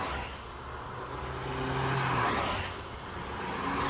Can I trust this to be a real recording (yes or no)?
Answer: yes